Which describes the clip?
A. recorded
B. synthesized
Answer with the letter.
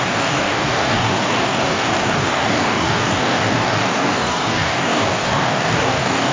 B